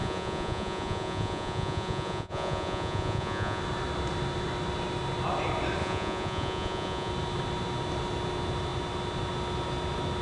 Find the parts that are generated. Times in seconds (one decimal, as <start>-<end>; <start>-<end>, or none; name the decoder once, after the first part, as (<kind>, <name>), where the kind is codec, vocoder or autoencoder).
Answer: 0.0-3.6 (vocoder, Vocos); 5.8-7.1